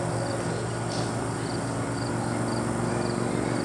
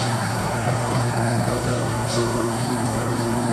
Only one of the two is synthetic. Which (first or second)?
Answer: second